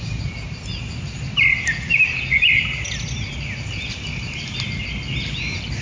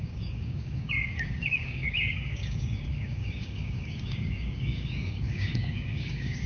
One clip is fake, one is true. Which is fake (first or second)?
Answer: second